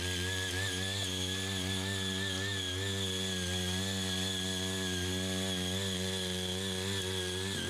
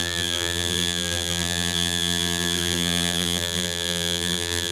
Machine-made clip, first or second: second